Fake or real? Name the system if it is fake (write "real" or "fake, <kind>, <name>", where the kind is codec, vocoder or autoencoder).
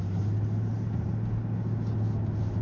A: real